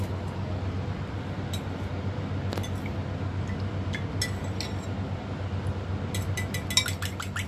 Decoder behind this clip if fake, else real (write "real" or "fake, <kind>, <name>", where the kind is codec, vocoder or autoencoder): real